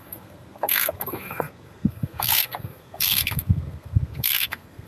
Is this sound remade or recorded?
remade